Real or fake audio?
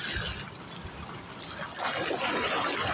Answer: real